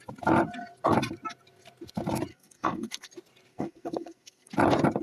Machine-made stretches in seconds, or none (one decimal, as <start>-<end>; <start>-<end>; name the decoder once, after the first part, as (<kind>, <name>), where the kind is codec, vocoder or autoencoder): 2.3-3.1 (codec, SNAC); 3.5-4.5